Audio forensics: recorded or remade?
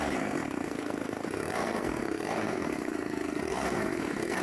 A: remade